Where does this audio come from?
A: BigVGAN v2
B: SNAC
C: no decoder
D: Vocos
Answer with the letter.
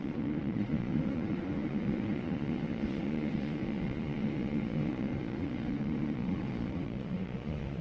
D